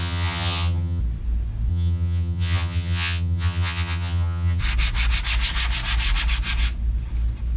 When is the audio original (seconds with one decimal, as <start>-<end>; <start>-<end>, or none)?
1.0-1.7; 4.6-7.6